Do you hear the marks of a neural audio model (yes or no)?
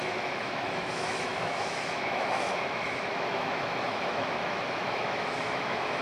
yes